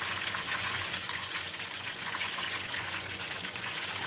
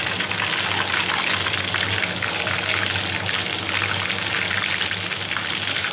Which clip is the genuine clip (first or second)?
second